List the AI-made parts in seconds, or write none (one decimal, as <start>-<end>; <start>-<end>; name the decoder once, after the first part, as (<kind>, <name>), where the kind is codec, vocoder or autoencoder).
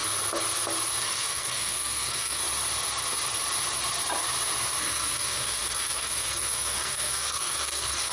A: 1.0-2.4 (codec, SNAC); 4.8-8.1